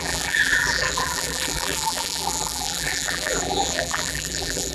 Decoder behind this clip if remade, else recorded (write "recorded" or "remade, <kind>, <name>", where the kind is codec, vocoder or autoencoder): remade, vocoder, BigVGAN v2